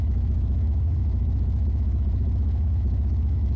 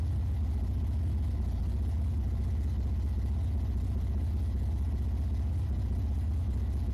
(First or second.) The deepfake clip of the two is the first